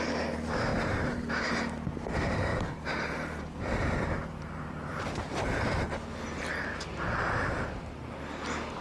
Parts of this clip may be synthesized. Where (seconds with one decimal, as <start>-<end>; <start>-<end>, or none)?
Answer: 0.7-1.3; 2.5-5.6